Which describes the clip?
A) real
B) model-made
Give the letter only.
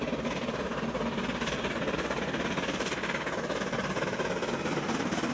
A